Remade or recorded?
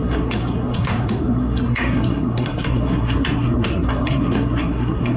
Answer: remade